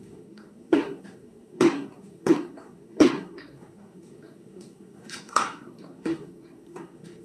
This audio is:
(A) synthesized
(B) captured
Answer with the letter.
A